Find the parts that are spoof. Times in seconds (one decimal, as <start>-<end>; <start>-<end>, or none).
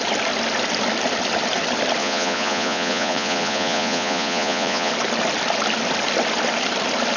2.0-4.9